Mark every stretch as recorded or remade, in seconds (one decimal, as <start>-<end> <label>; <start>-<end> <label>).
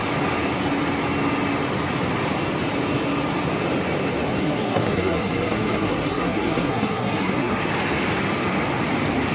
0.0-4.4 recorded; 4.4-7.6 remade; 7.6-9.3 recorded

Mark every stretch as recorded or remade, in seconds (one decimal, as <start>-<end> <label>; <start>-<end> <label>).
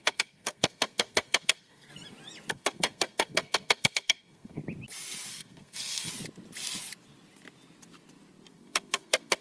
0.0-1.9 remade; 1.9-2.5 recorded; 2.5-4.6 remade; 4.6-5.3 recorded; 5.3-6.1 remade; 6.1-8.5 recorded; 8.5-9.4 remade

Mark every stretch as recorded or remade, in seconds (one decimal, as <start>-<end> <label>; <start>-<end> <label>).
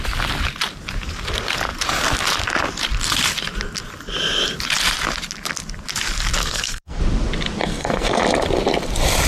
0.0-6.4 recorded; 6.4-7.0 remade; 7.0-7.6 recorded; 7.6-8.2 remade; 8.2-9.3 recorded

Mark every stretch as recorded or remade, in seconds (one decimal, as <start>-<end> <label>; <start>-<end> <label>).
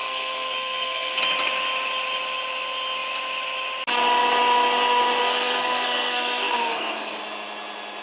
0.0-1.2 remade; 1.2-5.2 recorded; 5.2-7.2 remade; 7.2-8.0 recorded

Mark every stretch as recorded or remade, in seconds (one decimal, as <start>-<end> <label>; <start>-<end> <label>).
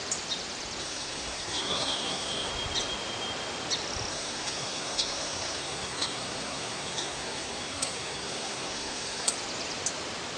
0.0-0.8 recorded; 0.8-2.5 remade; 2.5-4.1 recorded; 4.1-9.3 remade; 9.3-10.4 recorded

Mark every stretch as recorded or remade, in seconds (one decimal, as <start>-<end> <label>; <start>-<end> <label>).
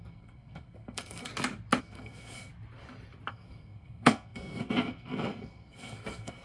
0.0-1.3 remade; 1.3-1.8 recorded; 1.8-2.5 remade; 2.5-3.3 recorded; 3.3-6.4 remade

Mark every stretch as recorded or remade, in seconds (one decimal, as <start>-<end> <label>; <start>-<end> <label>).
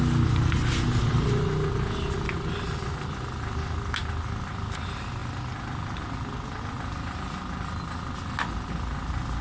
0.0-9.4 recorded